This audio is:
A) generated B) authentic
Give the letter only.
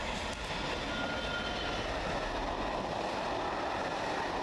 B